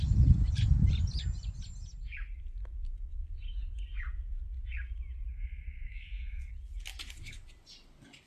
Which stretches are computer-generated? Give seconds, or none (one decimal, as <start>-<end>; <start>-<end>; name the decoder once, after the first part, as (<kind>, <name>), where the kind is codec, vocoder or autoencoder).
5.3-6.5 (codec, SNAC)